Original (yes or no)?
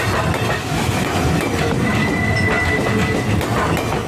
yes